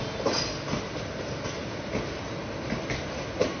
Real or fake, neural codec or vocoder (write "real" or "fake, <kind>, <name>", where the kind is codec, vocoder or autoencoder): real